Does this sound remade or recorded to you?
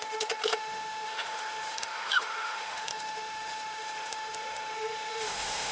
remade